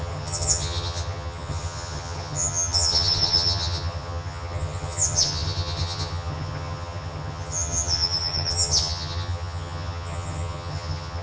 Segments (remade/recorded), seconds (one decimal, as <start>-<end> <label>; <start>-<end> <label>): 0.0-11.2 remade